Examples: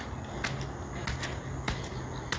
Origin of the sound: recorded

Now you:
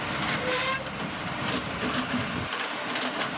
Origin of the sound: remade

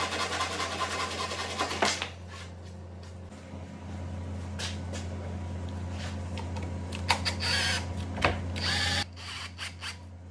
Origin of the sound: recorded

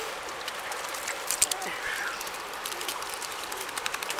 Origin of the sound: remade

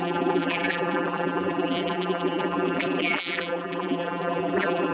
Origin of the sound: remade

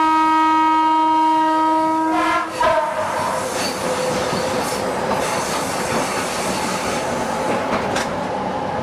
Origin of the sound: recorded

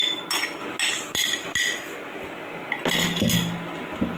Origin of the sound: recorded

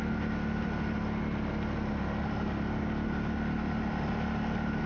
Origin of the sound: recorded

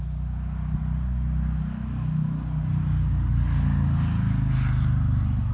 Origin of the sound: recorded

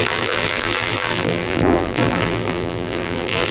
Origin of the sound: remade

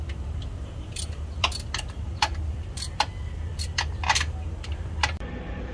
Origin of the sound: remade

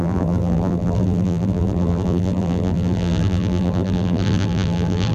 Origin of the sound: remade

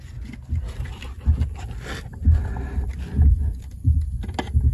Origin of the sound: recorded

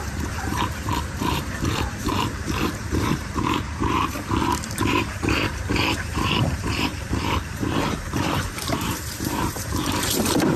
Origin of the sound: remade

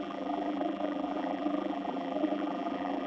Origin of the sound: remade